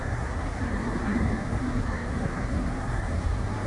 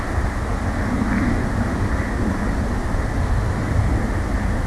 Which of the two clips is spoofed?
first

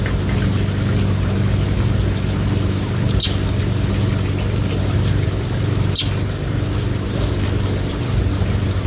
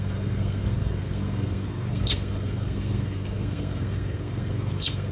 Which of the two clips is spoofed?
second